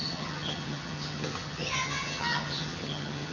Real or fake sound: fake